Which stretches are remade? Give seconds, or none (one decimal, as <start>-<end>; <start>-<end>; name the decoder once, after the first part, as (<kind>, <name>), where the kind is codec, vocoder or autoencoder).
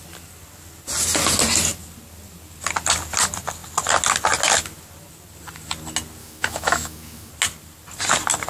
6.2-7.3 (autoencoder, DAC-VAE)